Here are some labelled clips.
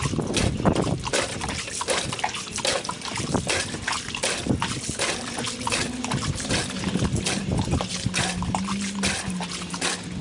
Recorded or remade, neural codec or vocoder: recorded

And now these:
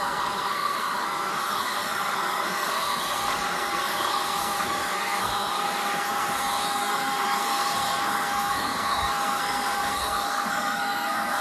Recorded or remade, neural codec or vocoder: remade, codec, SNAC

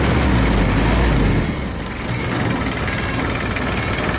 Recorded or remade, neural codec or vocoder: recorded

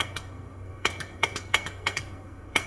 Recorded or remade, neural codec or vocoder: remade, codec, SNAC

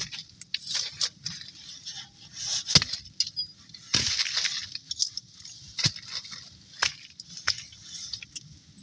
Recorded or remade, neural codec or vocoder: recorded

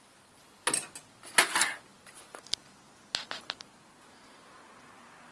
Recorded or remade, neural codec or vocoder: recorded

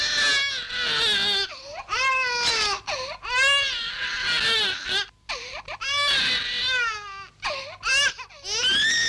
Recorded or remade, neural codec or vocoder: recorded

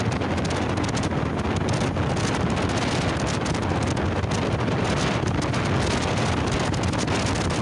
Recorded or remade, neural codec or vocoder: recorded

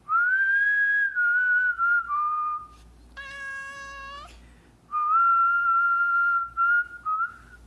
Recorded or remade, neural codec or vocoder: recorded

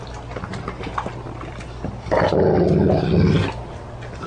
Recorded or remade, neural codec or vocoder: recorded